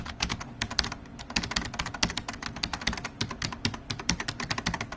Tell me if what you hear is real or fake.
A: real